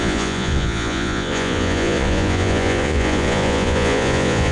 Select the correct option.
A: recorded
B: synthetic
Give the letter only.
B